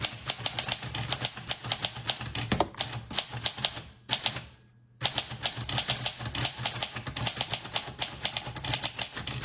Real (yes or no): yes